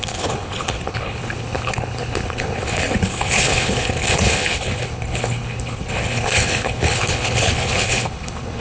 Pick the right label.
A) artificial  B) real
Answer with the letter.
A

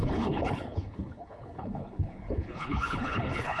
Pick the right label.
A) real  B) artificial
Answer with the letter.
B